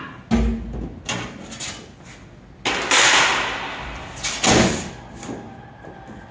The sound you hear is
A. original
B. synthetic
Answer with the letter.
A